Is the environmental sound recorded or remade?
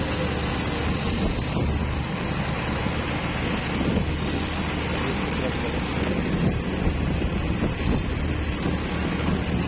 recorded